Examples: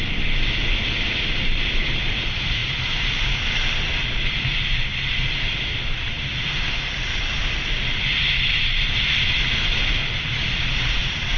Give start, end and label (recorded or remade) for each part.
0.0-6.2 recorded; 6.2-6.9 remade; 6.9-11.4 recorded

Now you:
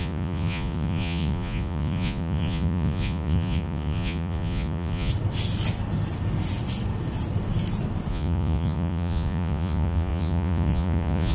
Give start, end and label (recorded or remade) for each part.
0.0-5.1 remade; 5.1-8.1 recorded; 8.1-11.3 remade

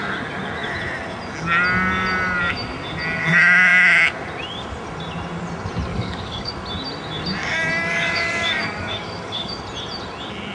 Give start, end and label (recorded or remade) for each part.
0.0-5.9 recorded; 5.9-6.5 remade; 6.5-7.4 recorded; 7.4-9.6 remade; 9.6-10.5 recorded